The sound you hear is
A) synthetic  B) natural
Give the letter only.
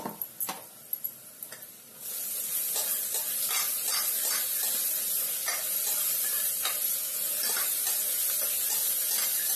B